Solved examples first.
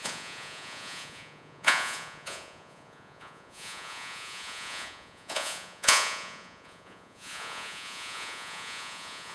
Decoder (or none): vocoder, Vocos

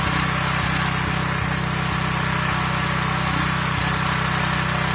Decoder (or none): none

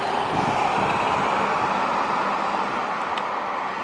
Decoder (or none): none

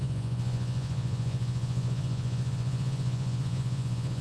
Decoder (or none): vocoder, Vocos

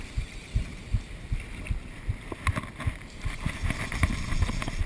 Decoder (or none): none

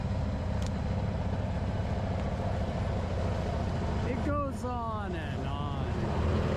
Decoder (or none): none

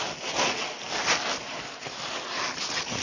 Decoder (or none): none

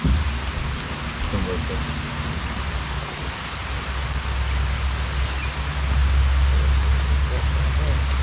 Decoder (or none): none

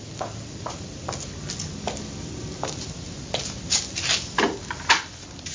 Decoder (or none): none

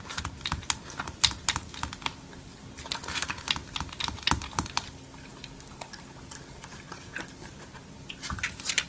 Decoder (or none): none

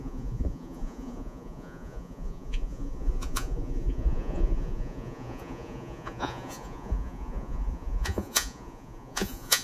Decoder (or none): vocoder, Vocos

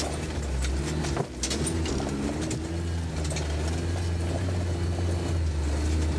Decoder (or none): none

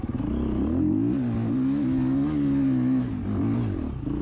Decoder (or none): none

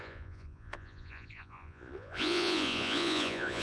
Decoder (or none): vocoder, Vocos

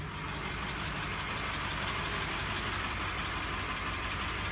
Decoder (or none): none